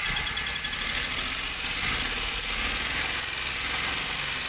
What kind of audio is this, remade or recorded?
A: recorded